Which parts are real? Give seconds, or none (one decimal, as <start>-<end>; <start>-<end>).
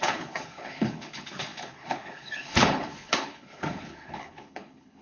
none